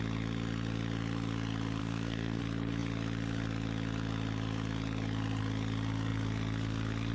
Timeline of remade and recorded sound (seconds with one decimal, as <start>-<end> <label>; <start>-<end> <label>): 0.0-1.8 recorded; 1.8-2.4 remade; 2.4-7.1 recorded